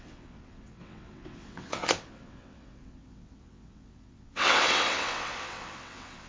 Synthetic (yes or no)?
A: yes